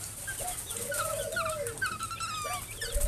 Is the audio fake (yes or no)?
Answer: no